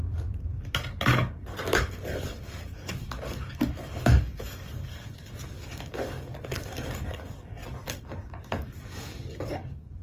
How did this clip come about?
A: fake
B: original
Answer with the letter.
A